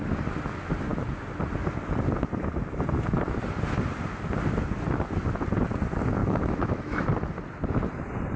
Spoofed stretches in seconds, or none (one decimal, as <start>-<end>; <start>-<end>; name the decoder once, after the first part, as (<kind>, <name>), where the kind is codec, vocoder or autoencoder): 6.2-7.0 (autoencoder, DAC-VAE)